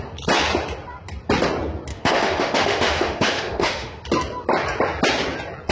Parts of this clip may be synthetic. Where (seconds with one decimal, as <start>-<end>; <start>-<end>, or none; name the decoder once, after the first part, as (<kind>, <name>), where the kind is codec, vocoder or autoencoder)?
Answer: 1.9-4.0 (autoencoder, DAC-VAE)